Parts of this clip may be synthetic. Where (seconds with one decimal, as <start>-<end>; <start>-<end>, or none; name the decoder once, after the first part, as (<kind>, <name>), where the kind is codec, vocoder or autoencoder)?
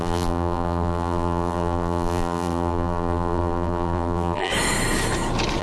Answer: 0.0-4.5 (vocoder, BigVGAN v2)